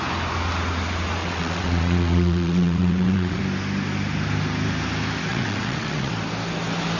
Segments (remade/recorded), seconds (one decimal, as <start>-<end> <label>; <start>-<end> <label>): 0.0-1.2 recorded; 1.2-3.4 remade; 3.4-5.3 recorded; 5.3-6.1 remade; 6.1-7.0 recorded